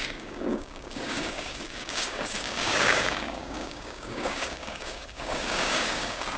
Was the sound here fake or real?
fake